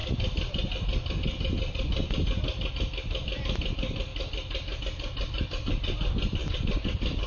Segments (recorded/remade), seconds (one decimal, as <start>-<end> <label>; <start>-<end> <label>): 0.0-7.3 recorded